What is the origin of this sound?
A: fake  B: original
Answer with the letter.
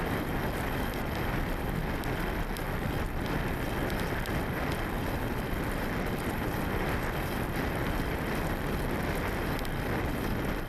B